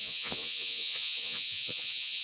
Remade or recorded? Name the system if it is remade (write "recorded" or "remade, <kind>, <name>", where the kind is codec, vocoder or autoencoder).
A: remade, vocoder, Vocos